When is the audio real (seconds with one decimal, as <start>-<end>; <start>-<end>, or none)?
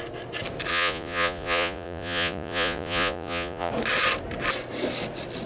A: 0.0-0.7; 3.7-5.5